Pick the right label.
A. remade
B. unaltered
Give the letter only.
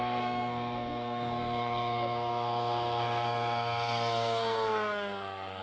A